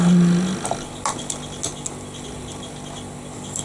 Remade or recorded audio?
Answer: recorded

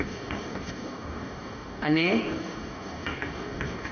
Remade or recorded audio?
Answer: remade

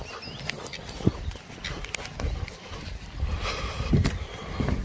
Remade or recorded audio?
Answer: recorded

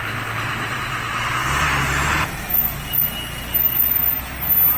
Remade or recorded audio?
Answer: recorded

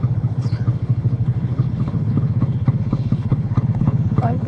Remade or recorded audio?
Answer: remade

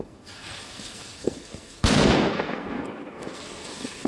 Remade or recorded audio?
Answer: remade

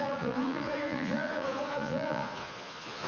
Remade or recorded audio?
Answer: remade